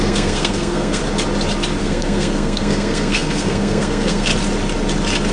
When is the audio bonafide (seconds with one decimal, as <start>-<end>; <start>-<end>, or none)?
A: 1.0-1.8; 4.3-5.3